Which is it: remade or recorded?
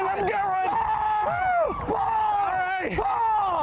recorded